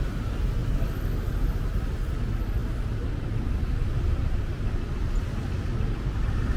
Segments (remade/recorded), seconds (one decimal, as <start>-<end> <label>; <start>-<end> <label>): 0.0-6.6 recorded